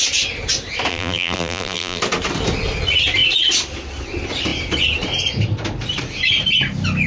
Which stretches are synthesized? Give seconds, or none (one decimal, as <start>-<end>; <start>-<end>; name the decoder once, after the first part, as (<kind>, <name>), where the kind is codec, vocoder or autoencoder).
0.9-2.0 (vocoder, BigVGAN v2)